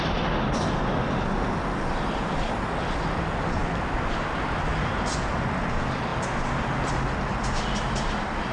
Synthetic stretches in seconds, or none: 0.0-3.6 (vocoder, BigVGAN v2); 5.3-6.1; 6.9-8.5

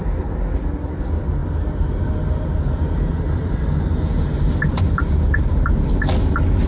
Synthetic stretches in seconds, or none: none

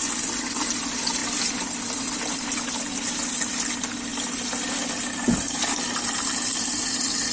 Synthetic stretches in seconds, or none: none

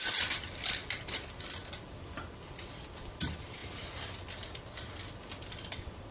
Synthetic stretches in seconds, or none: 0.0-3.6 (vocoder, BigVGAN v2); 4.1-6.1

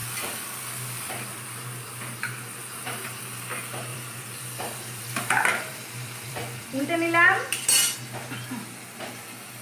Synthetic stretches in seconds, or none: 3.9-6.8 (vocoder, BigVGAN v2)